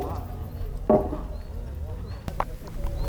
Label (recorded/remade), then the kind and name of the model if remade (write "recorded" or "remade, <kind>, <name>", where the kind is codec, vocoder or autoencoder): recorded